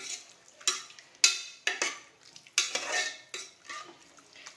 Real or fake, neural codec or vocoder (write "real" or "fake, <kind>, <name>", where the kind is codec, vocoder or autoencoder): real